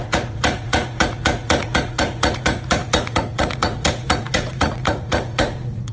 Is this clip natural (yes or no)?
no